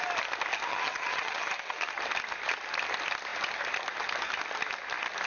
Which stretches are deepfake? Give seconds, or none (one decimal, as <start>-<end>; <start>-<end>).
0.7-1.8